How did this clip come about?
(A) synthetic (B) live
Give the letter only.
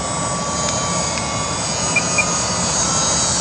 B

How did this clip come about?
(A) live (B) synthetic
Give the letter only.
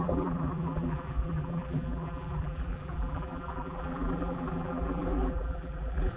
B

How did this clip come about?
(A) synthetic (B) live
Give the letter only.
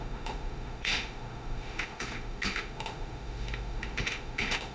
A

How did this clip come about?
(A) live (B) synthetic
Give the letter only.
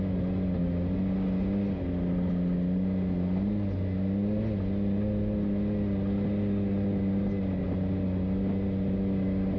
A